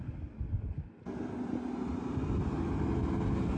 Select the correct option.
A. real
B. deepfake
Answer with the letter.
A